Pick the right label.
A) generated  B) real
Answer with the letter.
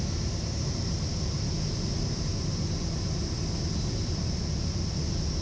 B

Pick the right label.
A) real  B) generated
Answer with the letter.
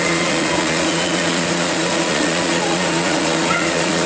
B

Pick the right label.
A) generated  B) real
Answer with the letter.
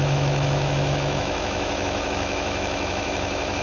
A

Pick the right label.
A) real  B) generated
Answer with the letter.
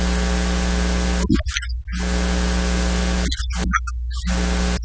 A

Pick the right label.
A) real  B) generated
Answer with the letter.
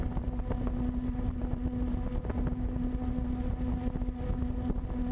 A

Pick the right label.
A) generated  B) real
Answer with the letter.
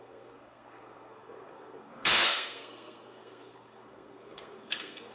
A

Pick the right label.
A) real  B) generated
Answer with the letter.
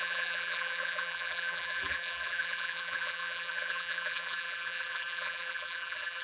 B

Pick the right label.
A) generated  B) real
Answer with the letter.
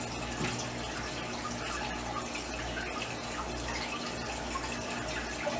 B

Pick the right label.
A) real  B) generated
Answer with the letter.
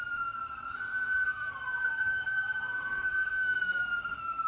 B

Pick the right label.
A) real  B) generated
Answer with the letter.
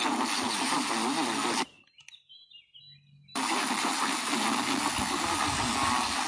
A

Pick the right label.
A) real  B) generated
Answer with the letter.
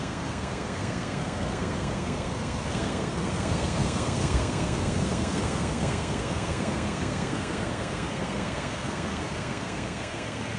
B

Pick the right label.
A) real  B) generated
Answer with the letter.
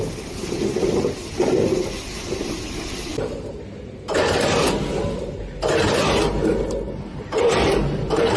A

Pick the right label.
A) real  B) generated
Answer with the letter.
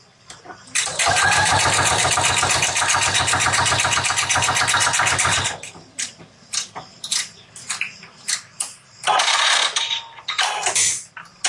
A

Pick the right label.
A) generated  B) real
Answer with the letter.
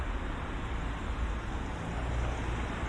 B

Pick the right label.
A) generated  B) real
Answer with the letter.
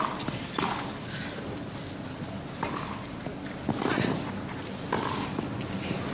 B